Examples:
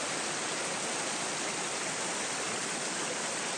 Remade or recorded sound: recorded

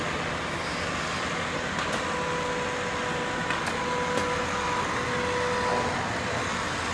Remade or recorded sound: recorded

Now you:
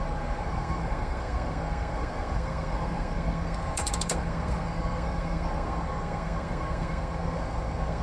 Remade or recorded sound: remade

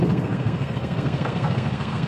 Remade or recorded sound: remade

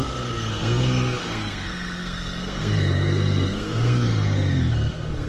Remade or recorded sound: remade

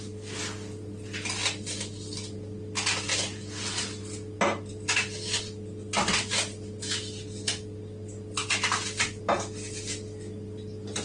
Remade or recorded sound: recorded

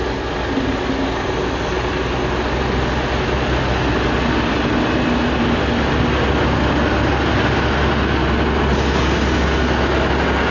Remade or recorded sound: recorded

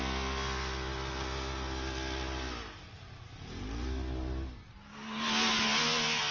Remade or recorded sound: recorded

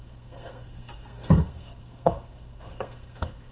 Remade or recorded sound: remade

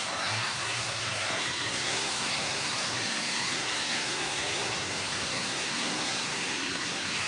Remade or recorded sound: remade